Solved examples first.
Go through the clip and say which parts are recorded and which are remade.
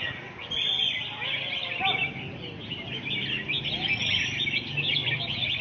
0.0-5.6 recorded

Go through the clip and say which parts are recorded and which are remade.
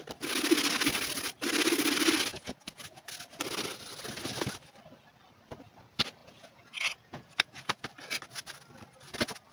0.0-2.3 recorded; 2.3-3.1 remade; 3.1-6.2 recorded; 6.2-7.8 remade; 7.8-9.5 recorded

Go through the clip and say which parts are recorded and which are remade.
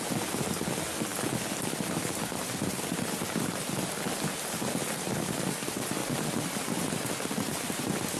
0.0-8.2 recorded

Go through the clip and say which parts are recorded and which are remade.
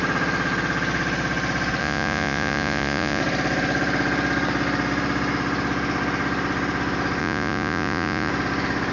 0.0-1.8 recorded; 1.8-3.2 remade; 3.2-7.2 recorded; 7.2-8.3 remade; 8.3-8.9 recorded